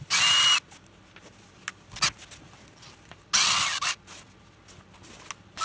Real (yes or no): yes